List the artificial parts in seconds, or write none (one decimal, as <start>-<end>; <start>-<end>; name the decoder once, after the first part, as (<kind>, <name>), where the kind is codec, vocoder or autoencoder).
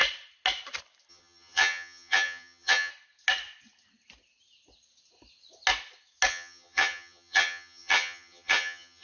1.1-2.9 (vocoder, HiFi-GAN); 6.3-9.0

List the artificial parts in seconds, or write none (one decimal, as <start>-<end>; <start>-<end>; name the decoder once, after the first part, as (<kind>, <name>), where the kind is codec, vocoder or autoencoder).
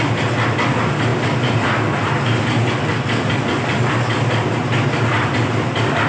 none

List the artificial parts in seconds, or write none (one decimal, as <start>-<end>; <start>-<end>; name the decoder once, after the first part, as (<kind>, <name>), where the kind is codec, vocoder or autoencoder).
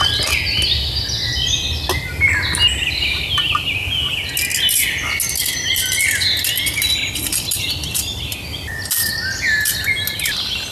none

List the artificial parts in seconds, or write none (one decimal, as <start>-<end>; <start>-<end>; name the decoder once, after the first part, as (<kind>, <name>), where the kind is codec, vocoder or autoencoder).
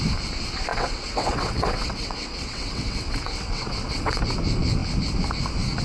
0.7-4.2 (vocoder, WaveNeXt)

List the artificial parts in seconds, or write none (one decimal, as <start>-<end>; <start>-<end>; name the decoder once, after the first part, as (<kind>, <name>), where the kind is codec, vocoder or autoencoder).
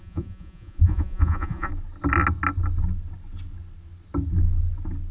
0.0-1.7 (vocoder, Vocos)